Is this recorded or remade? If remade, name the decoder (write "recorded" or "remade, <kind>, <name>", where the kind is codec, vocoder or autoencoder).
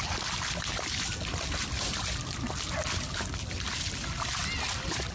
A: recorded